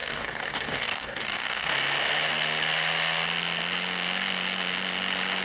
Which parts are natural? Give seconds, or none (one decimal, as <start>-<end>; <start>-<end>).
1.7-5.4